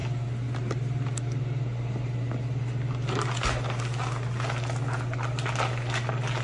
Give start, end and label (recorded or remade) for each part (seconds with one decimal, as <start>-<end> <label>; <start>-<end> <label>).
0.0-6.4 recorded